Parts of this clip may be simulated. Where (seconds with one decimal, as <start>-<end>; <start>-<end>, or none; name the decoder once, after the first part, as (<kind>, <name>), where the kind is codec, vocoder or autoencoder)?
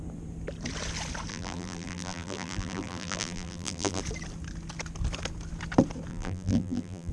1.3-4.0 (vocoder, BigVGAN v2); 6.1-7.1